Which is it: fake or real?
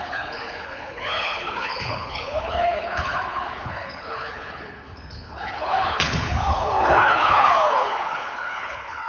fake